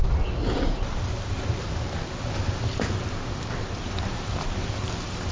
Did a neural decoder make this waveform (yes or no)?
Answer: no